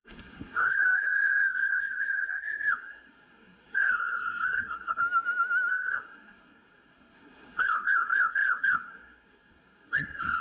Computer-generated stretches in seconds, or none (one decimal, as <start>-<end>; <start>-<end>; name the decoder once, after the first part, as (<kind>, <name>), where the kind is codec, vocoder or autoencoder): 0.0-5.0 (codec, SNAC); 5.7-10.4